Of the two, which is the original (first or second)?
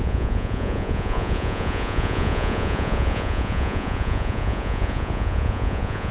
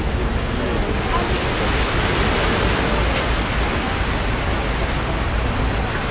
second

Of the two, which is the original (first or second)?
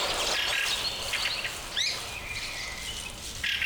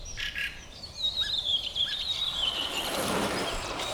first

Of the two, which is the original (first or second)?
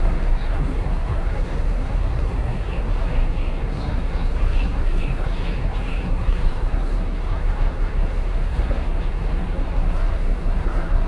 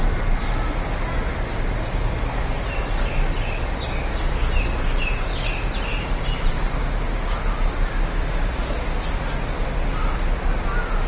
second